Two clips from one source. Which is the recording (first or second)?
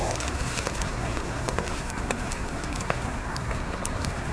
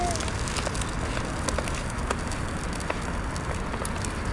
second